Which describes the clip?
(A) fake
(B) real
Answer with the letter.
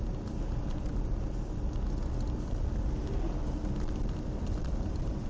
B